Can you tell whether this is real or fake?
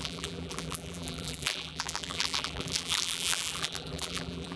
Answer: fake